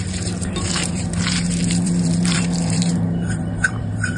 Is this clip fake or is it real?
fake